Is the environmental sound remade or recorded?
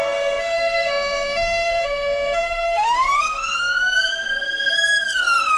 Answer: remade